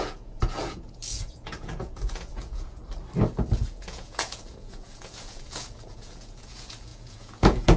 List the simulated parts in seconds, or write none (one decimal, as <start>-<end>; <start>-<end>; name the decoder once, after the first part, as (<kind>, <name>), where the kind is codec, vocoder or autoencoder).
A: 0.0-2.8 (vocoder, Vocos); 3.6-7.8

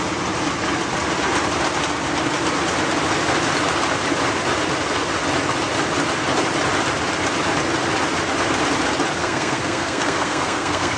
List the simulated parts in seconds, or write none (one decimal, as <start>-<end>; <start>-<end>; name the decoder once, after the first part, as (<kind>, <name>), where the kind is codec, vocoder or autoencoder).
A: 9.2-11.0 (codec, SNAC)